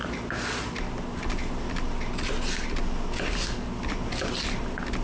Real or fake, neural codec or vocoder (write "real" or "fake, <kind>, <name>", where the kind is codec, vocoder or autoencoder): real